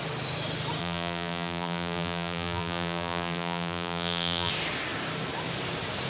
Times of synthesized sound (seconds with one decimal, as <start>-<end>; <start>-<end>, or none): 0.8-4.5